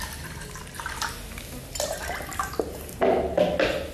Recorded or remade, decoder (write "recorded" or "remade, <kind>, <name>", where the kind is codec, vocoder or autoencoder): recorded